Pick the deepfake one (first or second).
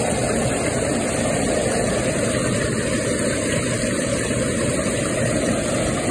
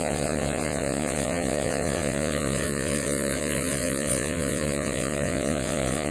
second